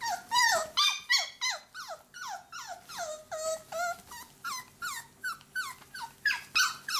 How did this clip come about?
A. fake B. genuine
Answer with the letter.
B